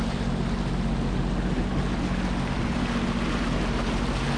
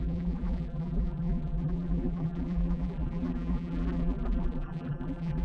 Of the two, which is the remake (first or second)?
second